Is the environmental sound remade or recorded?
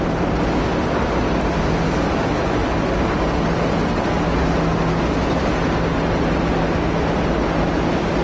recorded